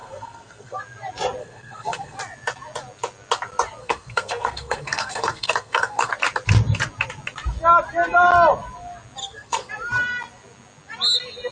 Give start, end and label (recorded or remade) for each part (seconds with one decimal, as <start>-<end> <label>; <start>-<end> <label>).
0.0-0.8 remade; 0.8-1.4 recorded; 1.4-2.2 remade; 2.2-3.8 recorded; 3.8-6.1 remade; 6.1-9.2 recorded; 9.2-9.7 remade; 9.7-11.5 recorded